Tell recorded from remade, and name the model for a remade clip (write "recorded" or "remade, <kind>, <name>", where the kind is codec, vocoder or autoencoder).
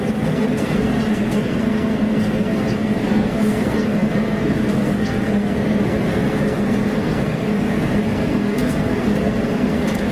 remade, codec, SNAC